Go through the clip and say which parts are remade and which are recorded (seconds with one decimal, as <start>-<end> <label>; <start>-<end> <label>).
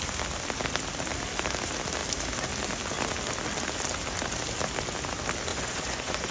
0.0-5.5 recorded; 5.5-6.3 remade